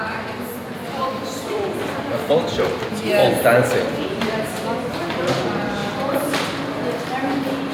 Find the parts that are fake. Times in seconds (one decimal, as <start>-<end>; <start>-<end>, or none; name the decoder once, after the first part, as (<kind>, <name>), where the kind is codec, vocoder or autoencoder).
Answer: 1.0-2.0 (vocoder, BigVGAN v2); 3.2-4.0; 5.8-6.3